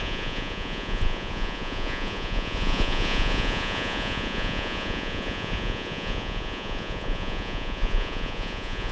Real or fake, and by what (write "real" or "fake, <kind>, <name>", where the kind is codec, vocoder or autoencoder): fake, vocoder, Vocos